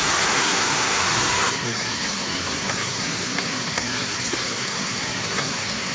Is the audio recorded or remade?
remade